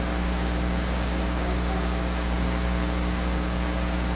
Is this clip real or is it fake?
fake